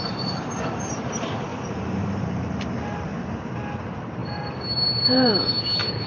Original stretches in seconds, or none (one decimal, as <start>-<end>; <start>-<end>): 0.0-1.5; 2.7-3.1; 3.7-4.2; 5.3-6.1